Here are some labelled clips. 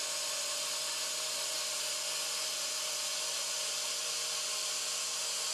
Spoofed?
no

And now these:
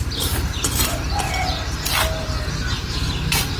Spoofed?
no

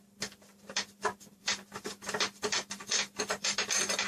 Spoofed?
yes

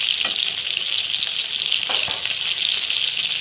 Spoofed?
no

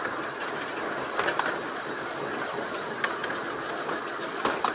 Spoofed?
no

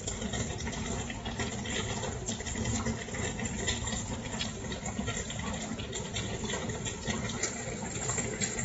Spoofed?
no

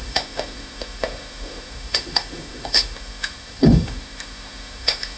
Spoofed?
yes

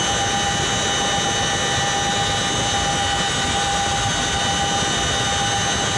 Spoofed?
no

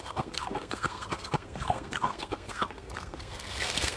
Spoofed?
yes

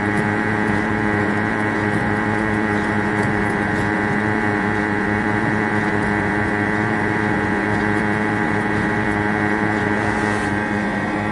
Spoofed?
yes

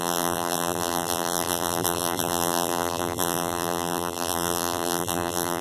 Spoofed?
yes